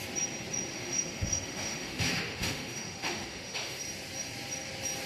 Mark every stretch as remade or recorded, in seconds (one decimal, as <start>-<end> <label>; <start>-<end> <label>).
0.0-0.7 recorded; 0.7-3.8 remade; 3.8-5.1 recorded

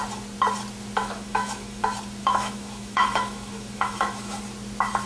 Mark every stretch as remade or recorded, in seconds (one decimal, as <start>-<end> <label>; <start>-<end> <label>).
0.0-1.0 recorded; 1.0-1.8 remade; 1.8-2.2 recorded; 2.2-4.4 remade; 4.4-5.1 recorded

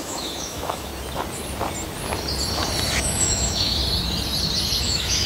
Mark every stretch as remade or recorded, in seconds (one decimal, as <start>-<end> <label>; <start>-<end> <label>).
0.0-0.9 remade; 0.9-3.0 recorded; 3.0-3.8 remade; 3.8-4.8 recorded; 4.8-5.3 remade

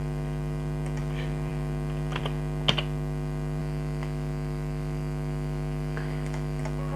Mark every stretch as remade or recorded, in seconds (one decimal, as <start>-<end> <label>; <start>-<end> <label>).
0.0-3.6 recorded; 3.6-6.6 remade; 6.6-7.0 recorded

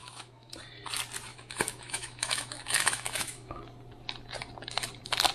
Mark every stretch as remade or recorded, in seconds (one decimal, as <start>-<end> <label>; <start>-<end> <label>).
0.0-0.5 remade; 0.5-1.3 recorded; 1.3-3.6 remade; 3.6-5.3 recorded

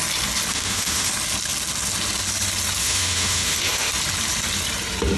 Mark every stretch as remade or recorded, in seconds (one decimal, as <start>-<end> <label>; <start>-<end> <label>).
0.0-0.5 recorded; 0.5-1.1 remade; 1.1-2.8 recorded; 2.8-3.9 remade; 3.9-5.2 recorded

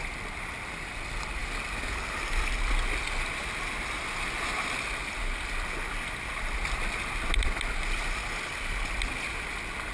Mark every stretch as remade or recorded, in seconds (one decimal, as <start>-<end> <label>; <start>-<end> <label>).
0.0-9.9 recorded

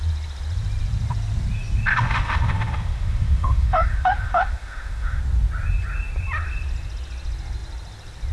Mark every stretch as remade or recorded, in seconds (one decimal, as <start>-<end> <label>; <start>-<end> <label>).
0.0-1.9 recorded; 1.9-5.2 remade; 5.2-8.3 recorded